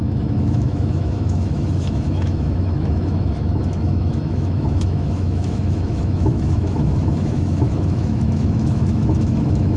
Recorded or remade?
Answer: remade